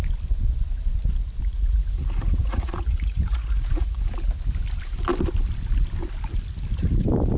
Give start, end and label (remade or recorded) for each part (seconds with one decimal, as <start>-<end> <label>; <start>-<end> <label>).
0.0-1.4 recorded; 1.4-4.0 remade; 4.0-7.4 recorded